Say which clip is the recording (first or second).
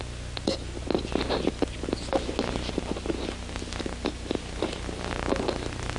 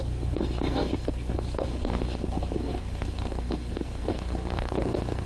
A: first